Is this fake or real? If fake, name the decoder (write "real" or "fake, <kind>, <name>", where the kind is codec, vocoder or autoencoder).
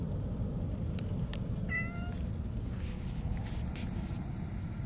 real